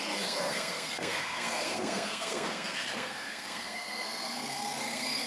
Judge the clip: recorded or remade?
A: remade